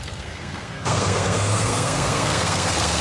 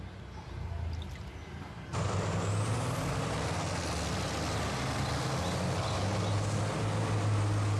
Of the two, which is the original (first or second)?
second